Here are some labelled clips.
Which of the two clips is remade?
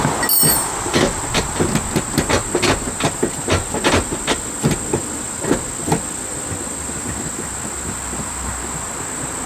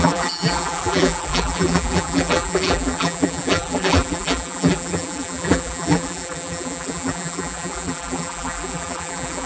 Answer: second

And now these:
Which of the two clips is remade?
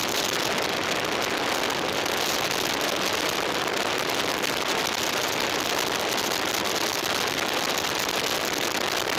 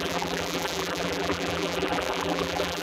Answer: second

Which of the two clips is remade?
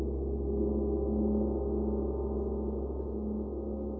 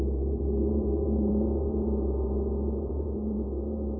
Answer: second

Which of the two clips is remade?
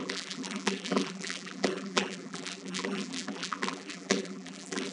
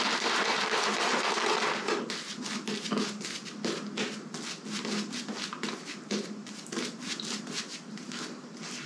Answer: first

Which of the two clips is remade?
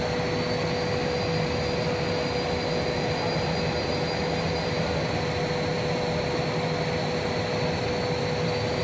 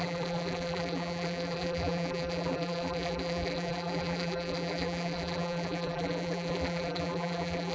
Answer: second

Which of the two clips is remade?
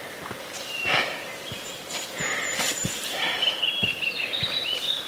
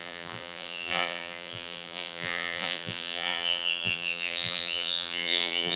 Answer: second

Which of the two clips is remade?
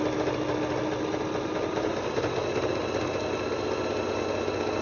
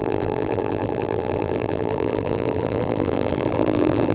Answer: second